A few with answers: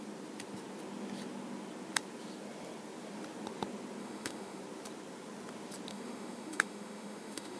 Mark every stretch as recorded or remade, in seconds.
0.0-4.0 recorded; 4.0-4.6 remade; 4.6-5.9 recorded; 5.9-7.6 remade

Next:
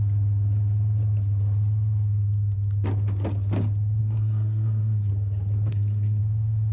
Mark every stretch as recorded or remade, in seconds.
0.0-4.0 recorded; 4.0-5.1 remade; 5.1-5.7 recorded; 5.7-6.2 remade; 6.2-6.7 recorded

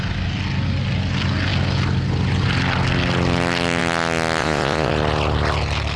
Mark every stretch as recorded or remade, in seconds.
0.0-4.4 recorded; 4.4-4.9 remade; 4.9-6.0 recorded

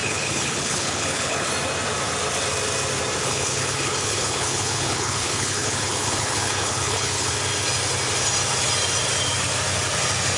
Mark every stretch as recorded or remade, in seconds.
0.0-1.5 remade; 1.5-3.2 recorded; 3.2-7.3 remade; 7.3-10.4 recorded

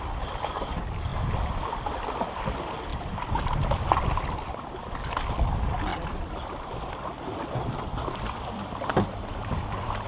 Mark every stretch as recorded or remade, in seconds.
0.0-1.1 remade; 1.1-2.3 recorded; 2.3-2.9 remade; 2.9-4.2 recorded; 4.2-10.1 remade

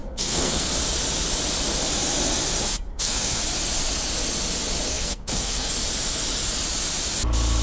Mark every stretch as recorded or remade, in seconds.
0.0-0.7 remade; 0.7-2.9 recorded; 2.9-3.4 remade; 3.4-4.9 recorded; 4.9-5.7 remade; 5.7-7.6 recorded

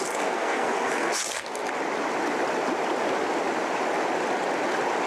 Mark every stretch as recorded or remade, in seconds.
0.0-1.6 remade; 1.6-5.1 recorded

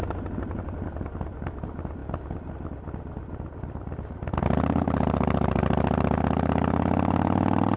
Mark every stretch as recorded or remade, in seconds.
0.0-7.8 recorded